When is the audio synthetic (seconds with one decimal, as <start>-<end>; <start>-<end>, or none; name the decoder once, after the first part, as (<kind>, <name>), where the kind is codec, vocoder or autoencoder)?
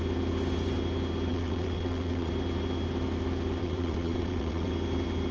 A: 1.3-2.3 (vocoder, WaveNeXt); 3.6-4.7